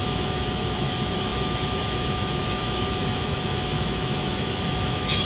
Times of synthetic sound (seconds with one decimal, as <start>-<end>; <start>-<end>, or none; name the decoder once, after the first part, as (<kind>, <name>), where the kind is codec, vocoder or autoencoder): 0.0-5.2 (autoencoder, DAC-VAE)